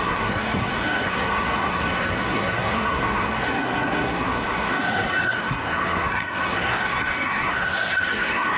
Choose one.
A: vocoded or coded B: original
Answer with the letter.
A